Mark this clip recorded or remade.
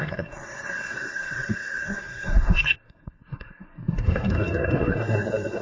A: remade